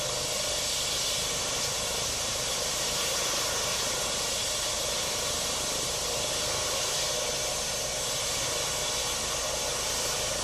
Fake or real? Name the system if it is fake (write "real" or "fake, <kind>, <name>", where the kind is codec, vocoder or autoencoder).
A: real